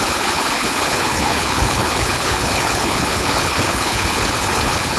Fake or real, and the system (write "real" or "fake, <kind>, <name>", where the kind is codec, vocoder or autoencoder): fake, codec, HILCodec